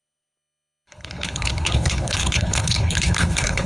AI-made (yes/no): yes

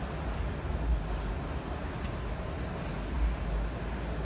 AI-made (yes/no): no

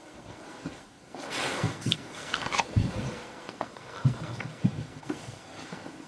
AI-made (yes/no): yes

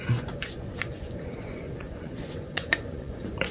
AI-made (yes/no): yes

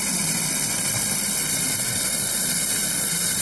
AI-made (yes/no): yes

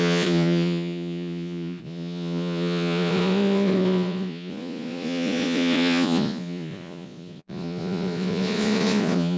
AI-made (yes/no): yes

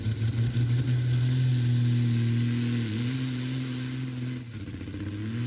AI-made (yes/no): no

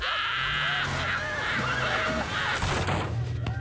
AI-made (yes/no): no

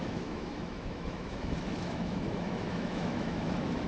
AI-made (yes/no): yes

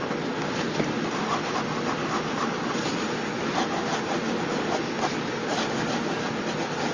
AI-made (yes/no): no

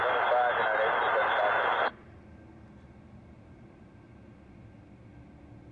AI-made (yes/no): no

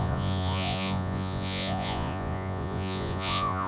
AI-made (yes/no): yes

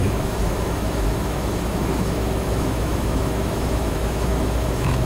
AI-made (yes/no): yes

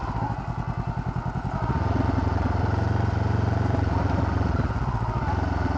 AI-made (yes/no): no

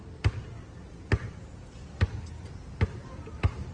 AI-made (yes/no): no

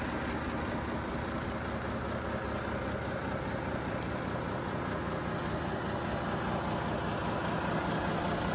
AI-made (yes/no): no